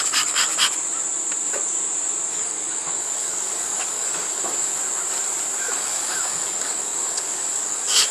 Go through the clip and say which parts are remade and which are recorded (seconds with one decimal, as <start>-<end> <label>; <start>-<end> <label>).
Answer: 0.0-0.5 remade; 0.5-2.3 recorded; 2.3-4.7 remade; 4.7-5.6 recorded; 5.6-8.1 remade